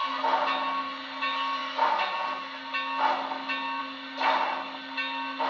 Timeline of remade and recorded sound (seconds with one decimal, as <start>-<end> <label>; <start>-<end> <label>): 0.0-5.5 recorded